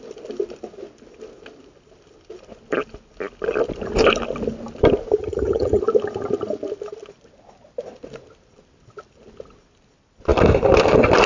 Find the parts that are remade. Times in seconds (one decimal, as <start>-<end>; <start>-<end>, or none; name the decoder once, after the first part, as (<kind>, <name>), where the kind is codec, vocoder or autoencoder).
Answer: 5.2-5.8 (vocoder, HiFi-GAN)